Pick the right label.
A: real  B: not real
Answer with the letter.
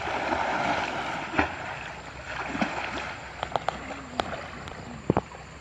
A